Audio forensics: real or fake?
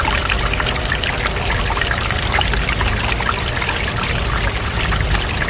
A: real